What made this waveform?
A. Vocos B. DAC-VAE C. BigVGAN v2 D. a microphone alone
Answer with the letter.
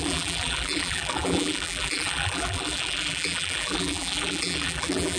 C